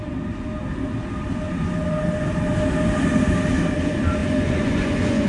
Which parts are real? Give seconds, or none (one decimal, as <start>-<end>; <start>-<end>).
0.0-4.2